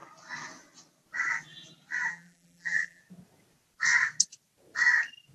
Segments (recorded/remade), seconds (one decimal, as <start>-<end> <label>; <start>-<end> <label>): 0.0-2.1 recorded; 2.1-3.0 remade; 3.0-5.3 recorded